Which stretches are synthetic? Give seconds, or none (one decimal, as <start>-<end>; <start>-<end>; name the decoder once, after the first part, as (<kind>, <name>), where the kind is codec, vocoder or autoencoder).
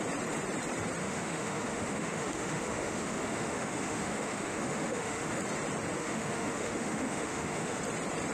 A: 1.0-5.4 (autoencoder, DAC-VAE); 6.0-7.8